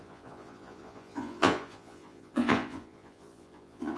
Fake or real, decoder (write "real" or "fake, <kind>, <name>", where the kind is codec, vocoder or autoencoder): fake, vocoder, Vocos